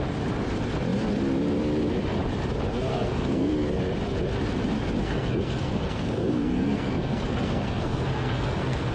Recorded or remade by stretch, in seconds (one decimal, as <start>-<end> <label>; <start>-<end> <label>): 0.0-2.9 recorded; 2.9-3.5 remade; 3.5-5.0 recorded; 5.0-8.9 remade